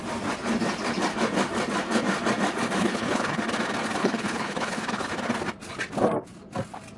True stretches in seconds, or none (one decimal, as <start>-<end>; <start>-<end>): 0.0-2.8; 3.4-4.0; 5.1-7.0